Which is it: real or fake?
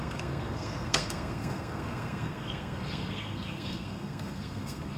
fake